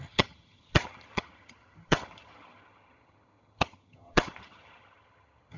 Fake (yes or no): yes